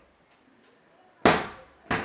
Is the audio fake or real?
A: real